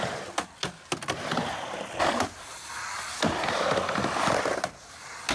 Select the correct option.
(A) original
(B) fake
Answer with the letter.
A